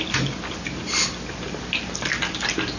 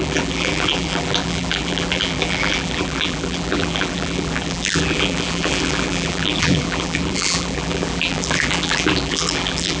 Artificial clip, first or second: second